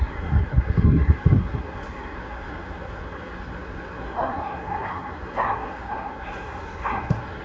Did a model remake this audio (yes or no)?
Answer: yes